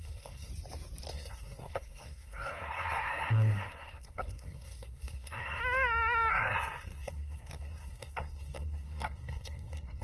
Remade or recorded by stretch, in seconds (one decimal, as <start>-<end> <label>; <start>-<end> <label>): 0.0-0.5 remade; 0.5-1.1 recorded; 1.1-5.6 remade; 5.6-6.3 recorded; 6.3-10.0 remade